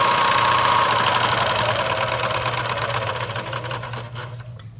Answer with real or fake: real